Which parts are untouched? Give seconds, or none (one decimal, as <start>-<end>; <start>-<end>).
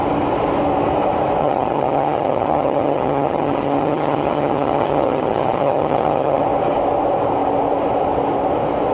0.0-1.4; 6.4-8.9